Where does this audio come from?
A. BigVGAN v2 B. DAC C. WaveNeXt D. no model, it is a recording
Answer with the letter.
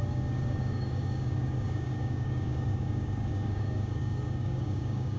B